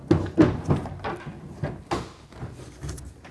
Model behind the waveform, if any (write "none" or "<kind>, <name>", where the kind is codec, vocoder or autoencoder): none